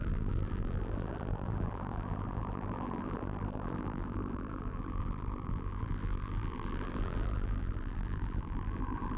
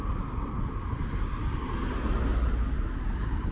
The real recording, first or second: second